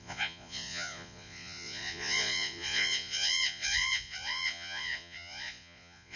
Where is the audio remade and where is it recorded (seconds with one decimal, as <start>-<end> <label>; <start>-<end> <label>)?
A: 0.0-6.2 remade